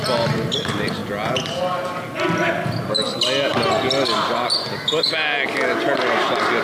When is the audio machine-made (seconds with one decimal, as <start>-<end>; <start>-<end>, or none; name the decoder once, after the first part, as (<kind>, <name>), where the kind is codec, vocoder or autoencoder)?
none